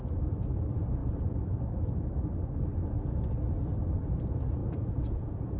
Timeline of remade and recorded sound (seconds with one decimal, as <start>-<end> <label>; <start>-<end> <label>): 0.0-4.6 recorded; 4.6-5.6 remade